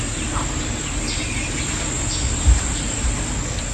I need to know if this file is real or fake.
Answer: real